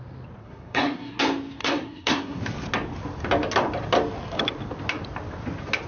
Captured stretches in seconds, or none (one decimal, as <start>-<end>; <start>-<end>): 0.0-0.4; 1.2-1.6; 2.4-5.9